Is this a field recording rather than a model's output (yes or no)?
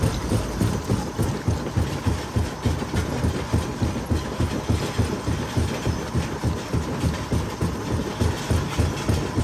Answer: yes